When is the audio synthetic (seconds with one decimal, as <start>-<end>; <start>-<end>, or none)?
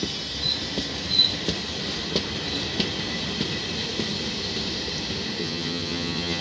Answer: 5.4-6.4